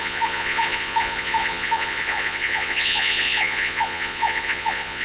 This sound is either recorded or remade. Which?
remade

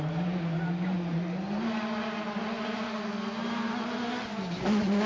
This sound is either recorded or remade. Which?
recorded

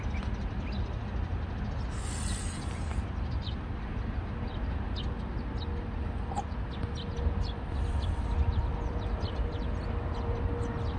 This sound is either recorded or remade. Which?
recorded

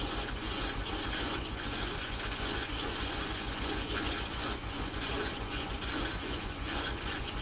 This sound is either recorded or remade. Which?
remade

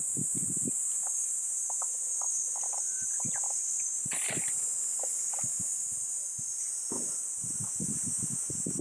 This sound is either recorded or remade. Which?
recorded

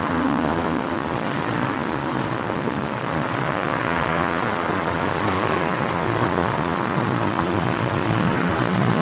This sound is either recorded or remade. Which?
remade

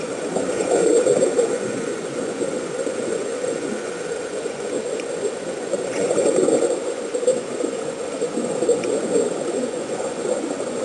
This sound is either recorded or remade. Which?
remade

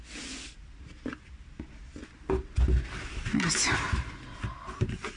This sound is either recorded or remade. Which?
recorded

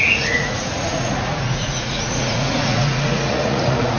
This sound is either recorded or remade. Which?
remade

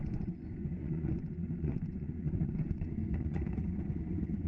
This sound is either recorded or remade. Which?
remade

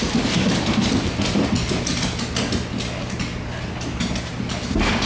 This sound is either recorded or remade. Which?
recorded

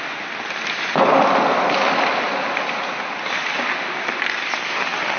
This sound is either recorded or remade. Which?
recorded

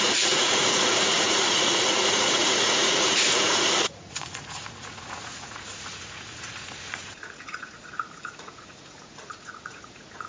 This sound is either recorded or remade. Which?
remade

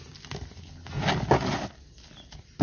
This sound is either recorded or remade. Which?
recorded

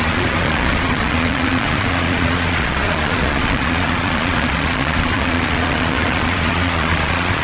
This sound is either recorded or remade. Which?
remade